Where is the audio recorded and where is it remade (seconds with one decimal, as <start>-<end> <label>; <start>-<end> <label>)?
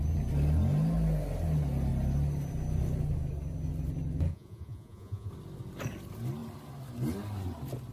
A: 0.0-4.3 recorded; 4.3-5.3 remade; 5.3-7.9 recorded